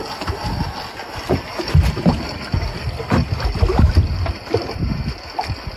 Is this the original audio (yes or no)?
yes